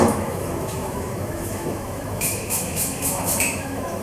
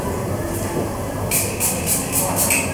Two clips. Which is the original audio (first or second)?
second